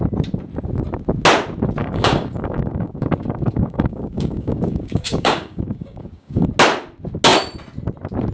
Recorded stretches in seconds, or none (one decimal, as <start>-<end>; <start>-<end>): 0.0-1.8; 6.5-8.3